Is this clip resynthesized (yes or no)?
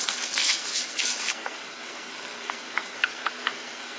yes